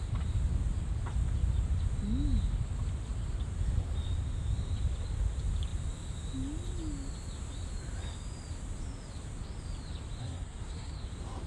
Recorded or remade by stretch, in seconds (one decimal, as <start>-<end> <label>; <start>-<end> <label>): 0.0-10.2 recorded; 10.2-10.9 remade; 10.9-11.5 recorded